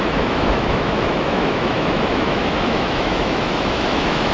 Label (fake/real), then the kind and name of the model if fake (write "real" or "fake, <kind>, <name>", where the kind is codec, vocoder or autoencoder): fake, autoencoder, DAC-VAE